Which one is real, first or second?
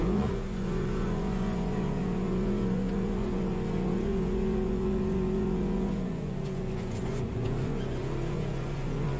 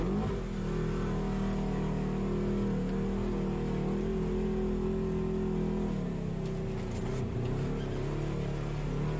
second